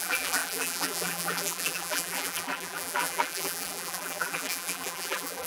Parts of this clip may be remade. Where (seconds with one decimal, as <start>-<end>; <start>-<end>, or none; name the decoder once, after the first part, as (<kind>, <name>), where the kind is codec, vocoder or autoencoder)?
0.0-5.5 (vocoder, BigVGAN v2)